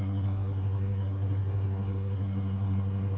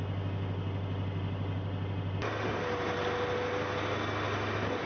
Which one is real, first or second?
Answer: second